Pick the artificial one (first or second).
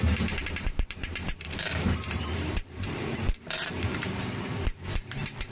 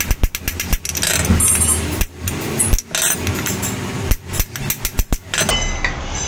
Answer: first